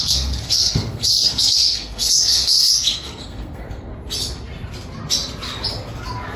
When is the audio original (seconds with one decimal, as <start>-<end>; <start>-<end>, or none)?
3.9-6.4